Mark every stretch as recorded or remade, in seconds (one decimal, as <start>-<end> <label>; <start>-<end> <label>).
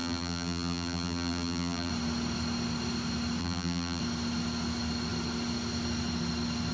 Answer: 0.0-1.9 remade; 1.9-3.4 recorded; 3.4-4.0 remade; 4.0-6.7 recorded